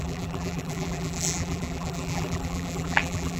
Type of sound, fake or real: fake